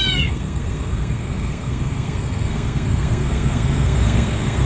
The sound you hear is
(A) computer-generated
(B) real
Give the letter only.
A